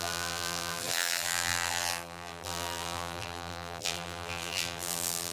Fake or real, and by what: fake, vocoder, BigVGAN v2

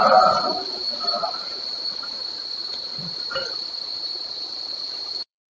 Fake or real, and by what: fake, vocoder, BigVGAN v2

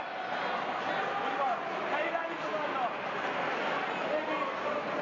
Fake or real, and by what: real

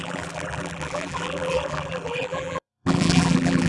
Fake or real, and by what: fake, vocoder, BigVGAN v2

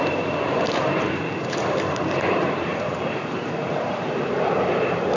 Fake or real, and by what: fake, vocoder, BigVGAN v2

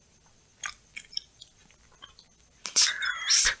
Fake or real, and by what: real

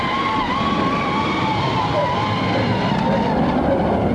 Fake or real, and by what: real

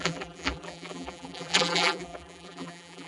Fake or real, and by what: fake, vocoder, BigVGAN v2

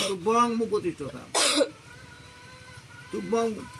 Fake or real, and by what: fake, vocoder, BigVGAN v2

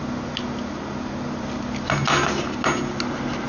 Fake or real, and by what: real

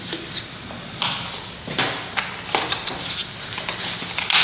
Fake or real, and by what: real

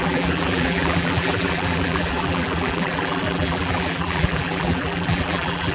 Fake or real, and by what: fake, vocoder, BigVGAN v2